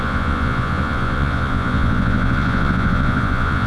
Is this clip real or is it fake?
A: fake